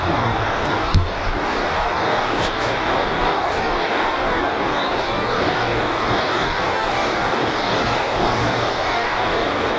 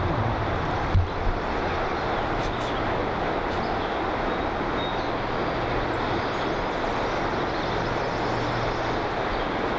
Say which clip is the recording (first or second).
second